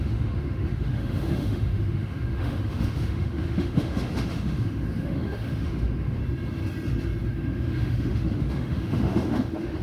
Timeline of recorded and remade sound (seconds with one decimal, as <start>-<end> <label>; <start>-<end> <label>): 0.0-6.2 remade; 6.2-7.2 recorded; 7.2-9.8 remade